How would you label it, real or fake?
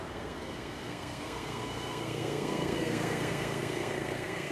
fake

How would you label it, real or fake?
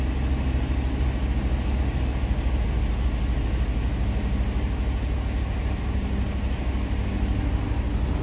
real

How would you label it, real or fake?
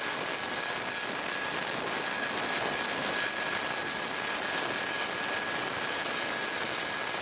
real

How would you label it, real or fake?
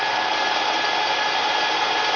real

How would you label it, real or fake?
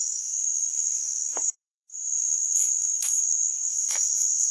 fake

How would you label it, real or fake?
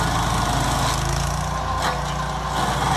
real